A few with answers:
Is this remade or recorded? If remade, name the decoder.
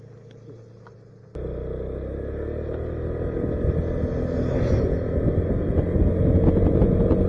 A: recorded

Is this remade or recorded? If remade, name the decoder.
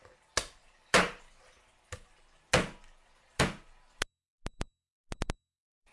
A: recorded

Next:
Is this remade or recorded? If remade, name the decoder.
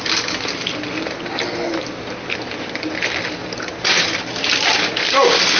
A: recorded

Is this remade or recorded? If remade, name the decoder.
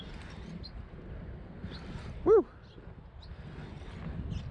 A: recorded